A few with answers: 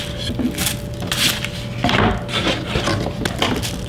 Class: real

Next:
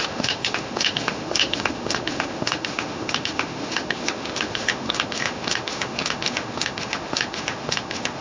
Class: fake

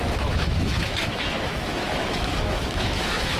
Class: fake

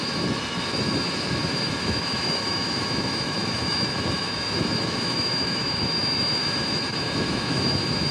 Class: fake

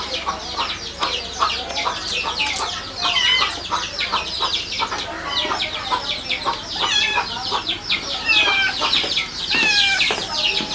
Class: real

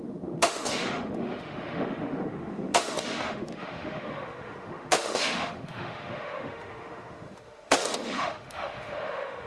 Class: fake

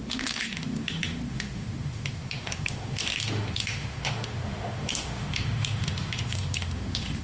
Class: fake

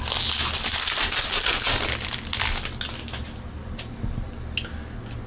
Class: real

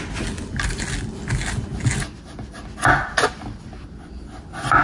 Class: real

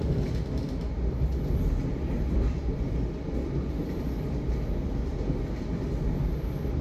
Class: real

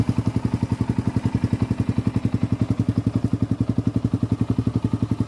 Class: real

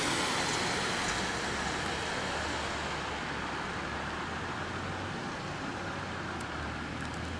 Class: real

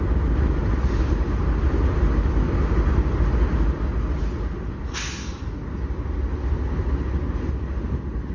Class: real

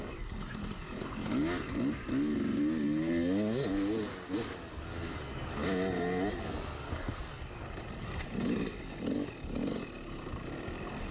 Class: real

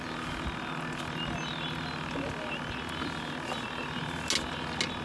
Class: real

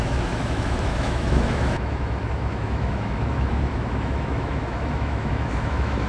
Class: fake